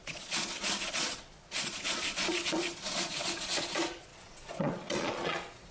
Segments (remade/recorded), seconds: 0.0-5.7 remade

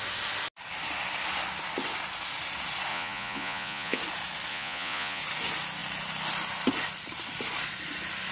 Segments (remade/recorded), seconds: 0.0-2.9 recorded; 2.9-4.0 remade; 4.0-4.5 recorded; 4.5-5.2 remade; 5.2-8.3 recorded